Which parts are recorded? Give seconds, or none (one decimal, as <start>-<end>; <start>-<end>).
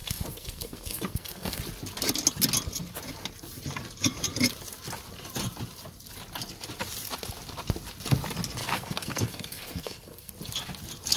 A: 1.6-8.6; 10.3-11.2